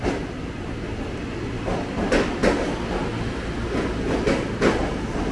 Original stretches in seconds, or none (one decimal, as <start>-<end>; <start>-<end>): 0.0-5.3